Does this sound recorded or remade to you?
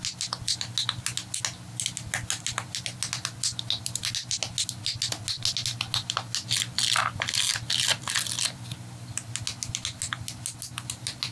recorded